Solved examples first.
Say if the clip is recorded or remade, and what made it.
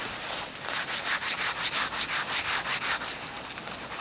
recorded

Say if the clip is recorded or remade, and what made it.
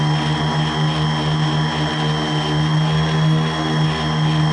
recorded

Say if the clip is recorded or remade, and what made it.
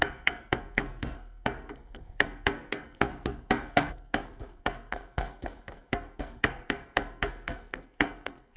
remade, codec, SNAC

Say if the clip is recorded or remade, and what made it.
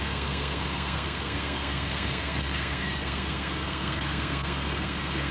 remade, codec, SNAC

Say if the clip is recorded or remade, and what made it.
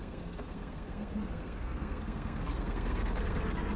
remade, codec, SNAC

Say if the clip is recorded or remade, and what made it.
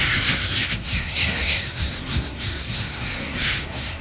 remade, codec, SNAC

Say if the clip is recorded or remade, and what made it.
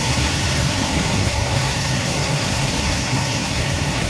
remade, codec, SNAC